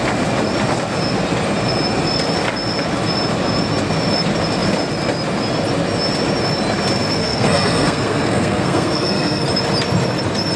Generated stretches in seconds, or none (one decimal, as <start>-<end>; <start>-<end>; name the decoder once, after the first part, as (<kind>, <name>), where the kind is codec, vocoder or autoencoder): 7.2-9.4 (codec, SNAC)